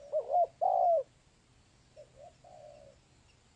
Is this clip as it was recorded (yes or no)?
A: yes